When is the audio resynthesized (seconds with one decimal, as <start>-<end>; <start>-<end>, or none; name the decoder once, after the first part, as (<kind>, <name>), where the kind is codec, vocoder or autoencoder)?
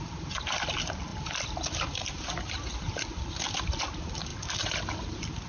none